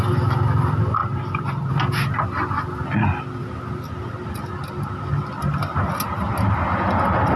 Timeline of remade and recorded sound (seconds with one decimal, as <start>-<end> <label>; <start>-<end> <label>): 0.0-7.4 recorded